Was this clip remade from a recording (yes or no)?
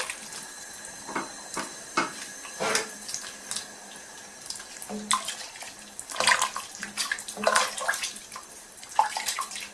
no